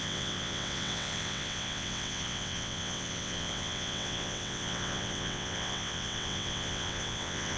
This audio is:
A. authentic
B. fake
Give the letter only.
B